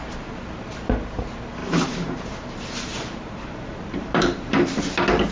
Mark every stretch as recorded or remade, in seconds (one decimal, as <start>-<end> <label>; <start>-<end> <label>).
0.0-1.6 recorded; 1.6-4.8 remade; 4.8-5.3 recorded